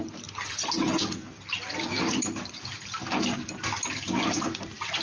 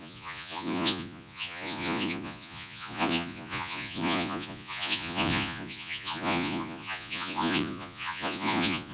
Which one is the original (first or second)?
first